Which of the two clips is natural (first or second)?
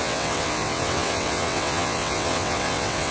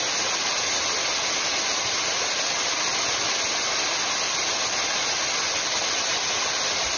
second